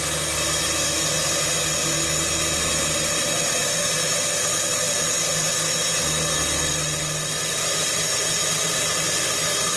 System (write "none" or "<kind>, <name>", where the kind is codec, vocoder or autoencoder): none